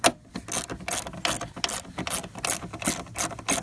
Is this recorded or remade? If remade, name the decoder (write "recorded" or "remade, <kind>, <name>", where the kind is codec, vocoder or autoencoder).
recorded